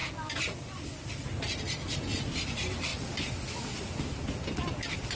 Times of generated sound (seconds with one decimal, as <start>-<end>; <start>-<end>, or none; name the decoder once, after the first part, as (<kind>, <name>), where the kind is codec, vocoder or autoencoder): none